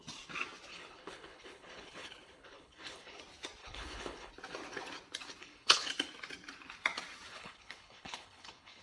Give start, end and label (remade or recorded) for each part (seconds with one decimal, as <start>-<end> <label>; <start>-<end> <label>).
0.0-0.7 recorded; 0.7-3.2 remade; 3.2-3.6 recorded; 3.6-4.3 remade; 4.3-5.4 recorded; 5.4-5.9 remade; 5.9-7.3 recorded; 7.3-8.8 remade